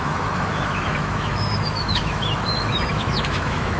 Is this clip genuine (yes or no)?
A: no